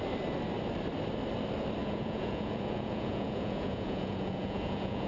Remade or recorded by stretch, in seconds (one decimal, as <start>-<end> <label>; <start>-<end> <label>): 0.0-1.8 recorded; 1.8-5.1 remade